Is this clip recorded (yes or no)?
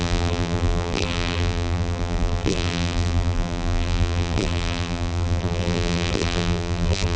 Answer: no